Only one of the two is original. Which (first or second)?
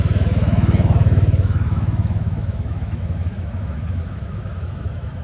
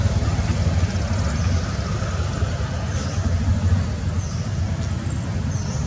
second